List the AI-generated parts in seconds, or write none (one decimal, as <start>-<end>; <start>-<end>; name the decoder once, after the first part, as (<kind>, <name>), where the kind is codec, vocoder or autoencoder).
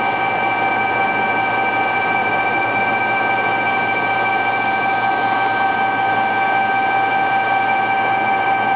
2.2-2.8 (vocoder, BigVGAN v2)